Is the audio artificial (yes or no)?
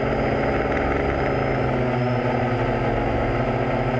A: no